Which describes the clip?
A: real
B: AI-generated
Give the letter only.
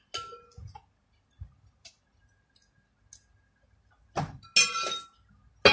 A